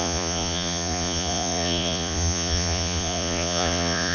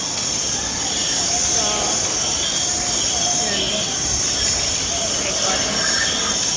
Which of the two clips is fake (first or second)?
first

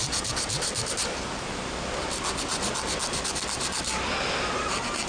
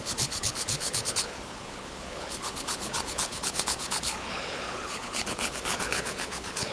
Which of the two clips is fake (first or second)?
second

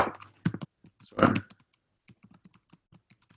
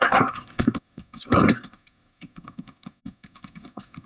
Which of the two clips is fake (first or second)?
second